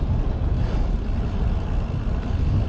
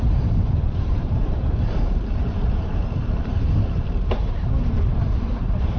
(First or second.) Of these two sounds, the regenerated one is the second